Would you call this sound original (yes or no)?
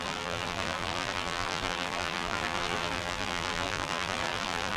no